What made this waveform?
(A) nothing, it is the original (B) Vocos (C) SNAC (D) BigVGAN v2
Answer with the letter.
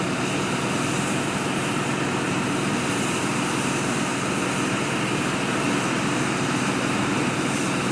A